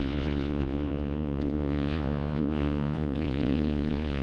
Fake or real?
fake